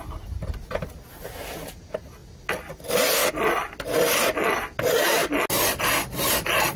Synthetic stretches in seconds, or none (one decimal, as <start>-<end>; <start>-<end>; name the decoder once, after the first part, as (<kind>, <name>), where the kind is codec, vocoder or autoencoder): none